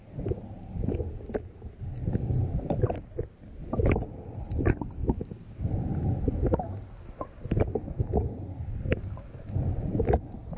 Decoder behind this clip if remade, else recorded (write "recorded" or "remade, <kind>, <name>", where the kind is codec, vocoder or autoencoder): recorded